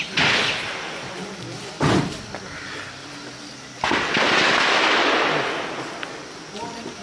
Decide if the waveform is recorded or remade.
recorded